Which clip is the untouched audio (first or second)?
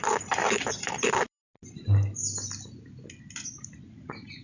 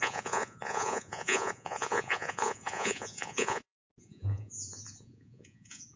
first